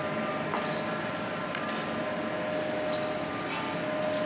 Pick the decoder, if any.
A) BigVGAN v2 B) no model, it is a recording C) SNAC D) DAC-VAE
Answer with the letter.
B